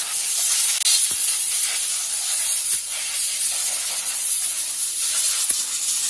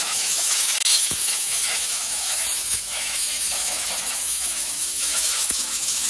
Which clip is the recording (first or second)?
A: first